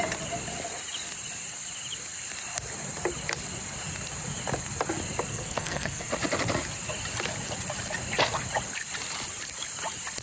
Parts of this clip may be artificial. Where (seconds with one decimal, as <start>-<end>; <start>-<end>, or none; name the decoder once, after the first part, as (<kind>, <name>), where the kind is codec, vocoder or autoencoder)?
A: 5.3-6.1 (codec, SNAC)